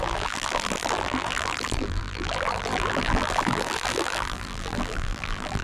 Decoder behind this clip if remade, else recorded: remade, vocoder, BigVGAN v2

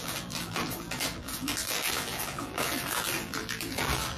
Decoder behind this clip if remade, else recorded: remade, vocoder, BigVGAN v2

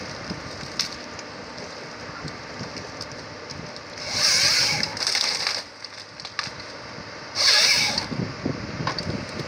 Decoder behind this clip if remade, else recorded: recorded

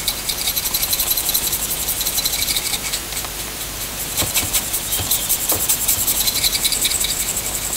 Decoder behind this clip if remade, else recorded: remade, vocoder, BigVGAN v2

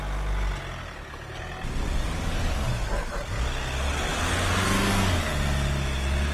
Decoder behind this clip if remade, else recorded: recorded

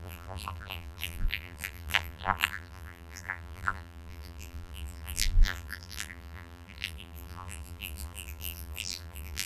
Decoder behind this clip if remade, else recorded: remade, vocoder, BigVGAN v2